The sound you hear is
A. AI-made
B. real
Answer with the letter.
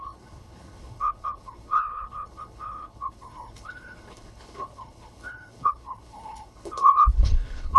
A